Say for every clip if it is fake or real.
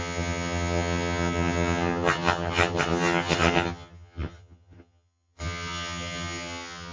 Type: fake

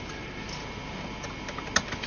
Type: real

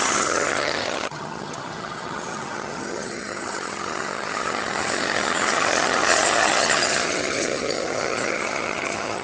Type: fake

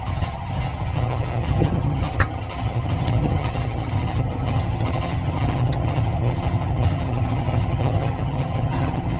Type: fake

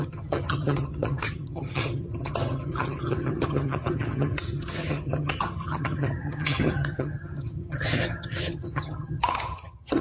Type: fake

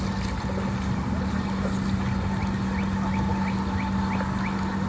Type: real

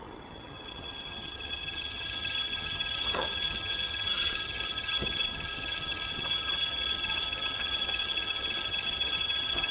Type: fake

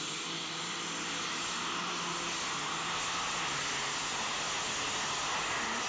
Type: real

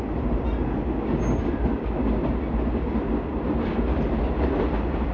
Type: real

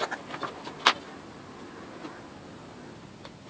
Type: real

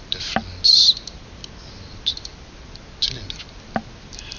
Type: real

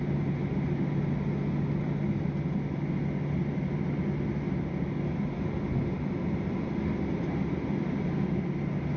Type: real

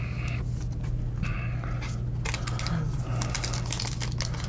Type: real